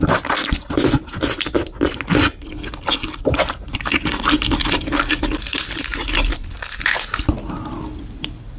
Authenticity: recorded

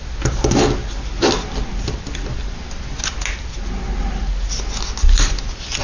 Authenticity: recorded